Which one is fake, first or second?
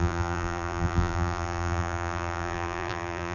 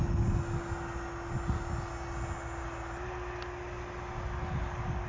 first